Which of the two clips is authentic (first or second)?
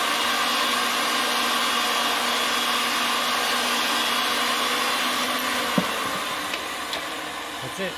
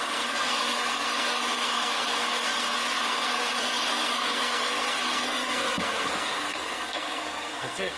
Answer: first